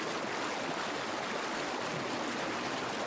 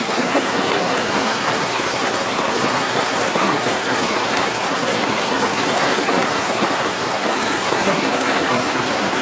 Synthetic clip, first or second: second